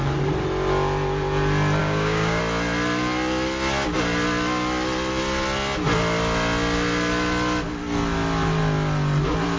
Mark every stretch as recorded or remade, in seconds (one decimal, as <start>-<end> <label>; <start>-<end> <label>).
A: 0.0-1.8 recorded; 1.8-2.4 remade; 2.4-9.6 recorded